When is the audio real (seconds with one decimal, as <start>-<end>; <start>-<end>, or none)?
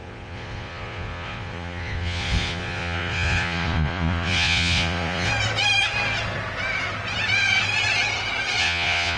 5.3-8.6